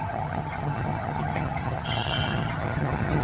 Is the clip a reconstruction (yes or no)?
yes